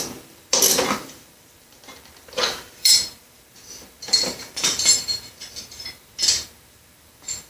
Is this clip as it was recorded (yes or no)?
no